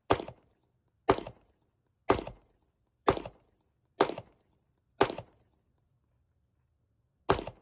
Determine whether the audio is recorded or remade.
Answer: recorded